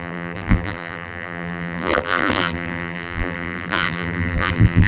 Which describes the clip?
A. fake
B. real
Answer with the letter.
A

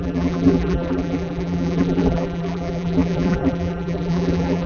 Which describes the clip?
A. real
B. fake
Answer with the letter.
B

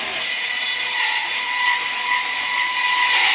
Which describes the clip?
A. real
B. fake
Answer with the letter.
B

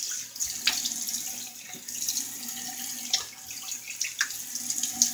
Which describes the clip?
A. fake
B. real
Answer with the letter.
B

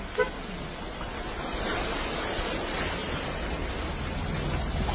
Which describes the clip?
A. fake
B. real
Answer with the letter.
B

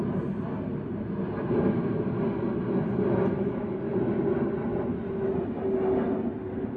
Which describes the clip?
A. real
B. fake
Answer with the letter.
A